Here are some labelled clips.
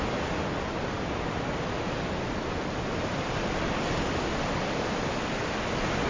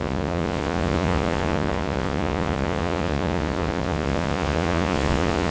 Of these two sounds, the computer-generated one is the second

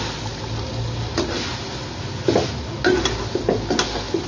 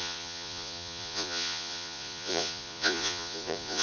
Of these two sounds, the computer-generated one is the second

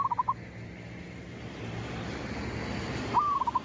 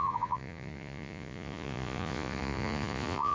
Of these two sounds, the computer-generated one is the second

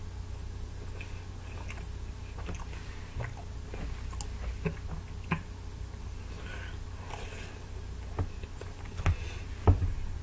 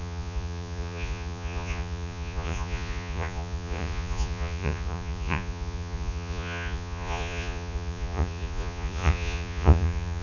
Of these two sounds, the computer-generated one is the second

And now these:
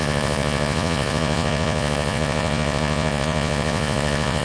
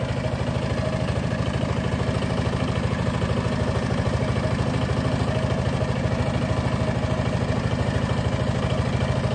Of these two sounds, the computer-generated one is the first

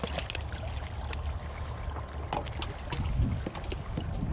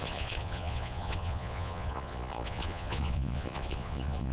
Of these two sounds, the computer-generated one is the second